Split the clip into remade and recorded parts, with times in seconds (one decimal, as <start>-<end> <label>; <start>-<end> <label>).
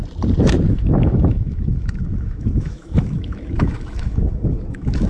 0.0-0.7 recorded; 0.7-5.1 remade